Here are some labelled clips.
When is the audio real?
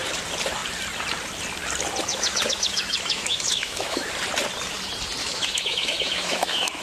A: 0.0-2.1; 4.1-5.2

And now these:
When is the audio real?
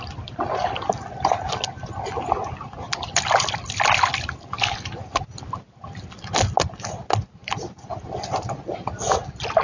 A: 0.0-0.6; 1.3-7.4; 7.9-9.6